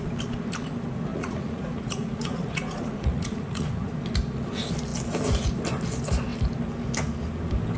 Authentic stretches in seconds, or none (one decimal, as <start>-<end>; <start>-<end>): 0.0-1.1; 3.9-7.8